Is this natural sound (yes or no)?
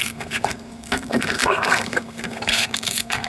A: no